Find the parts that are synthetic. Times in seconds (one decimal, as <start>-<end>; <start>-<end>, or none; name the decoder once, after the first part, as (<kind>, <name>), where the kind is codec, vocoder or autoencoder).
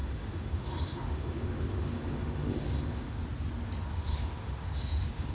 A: 0.0-3.2 (autoencoder, DAC-VAE); 3.9-5.3